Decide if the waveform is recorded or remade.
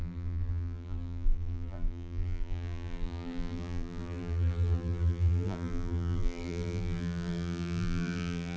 remade